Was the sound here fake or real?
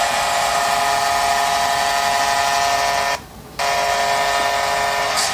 real